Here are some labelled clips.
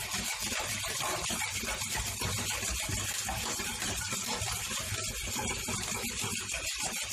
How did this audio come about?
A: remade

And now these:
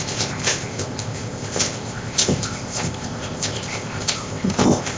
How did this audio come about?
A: remade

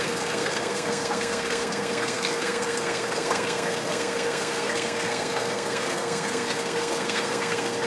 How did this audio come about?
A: remade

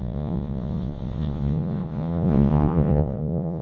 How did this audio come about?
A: remade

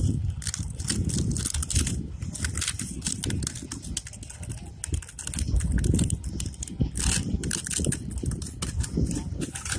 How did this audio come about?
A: recorded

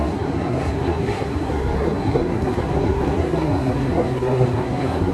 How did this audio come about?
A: remade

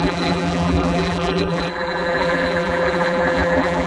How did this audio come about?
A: remade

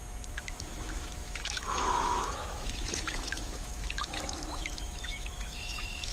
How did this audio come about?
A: remade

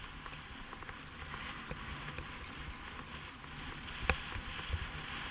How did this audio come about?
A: recorded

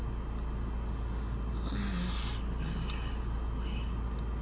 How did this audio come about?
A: recorded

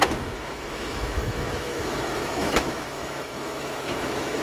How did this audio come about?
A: remade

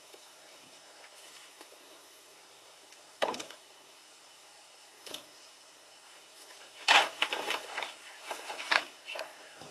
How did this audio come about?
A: remade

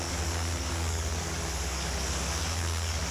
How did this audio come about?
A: remade